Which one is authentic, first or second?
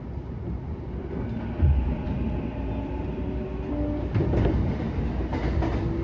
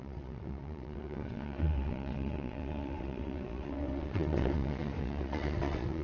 first